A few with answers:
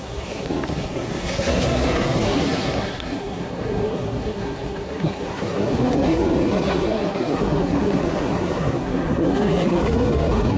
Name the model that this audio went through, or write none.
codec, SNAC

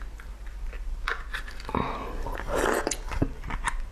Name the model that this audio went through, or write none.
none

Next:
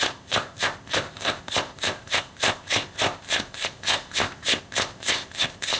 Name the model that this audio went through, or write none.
codec, ZipCodec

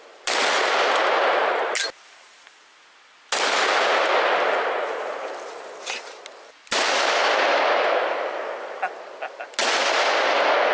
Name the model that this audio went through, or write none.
none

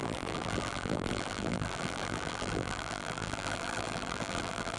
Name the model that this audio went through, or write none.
vocoder, BigVGAN v2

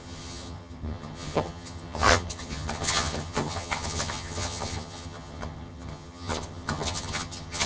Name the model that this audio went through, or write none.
vocoder, HiFi-GAN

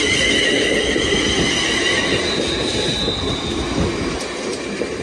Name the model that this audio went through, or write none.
none